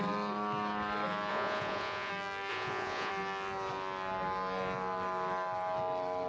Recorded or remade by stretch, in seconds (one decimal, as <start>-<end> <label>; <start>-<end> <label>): 0.0-1.3 recorded; 1.3-2.1 remade; 2.1-2.5 recorded; 2.5-3.1 remade; 3.1-6.3 recorded